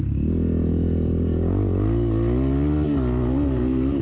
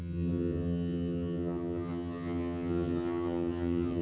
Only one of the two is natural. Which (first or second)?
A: first